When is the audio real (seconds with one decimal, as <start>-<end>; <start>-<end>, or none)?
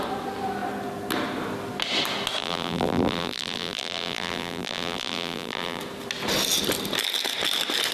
0.0-2.4; 5.8-7.9